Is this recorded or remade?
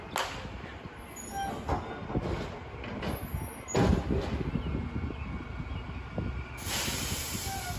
recorded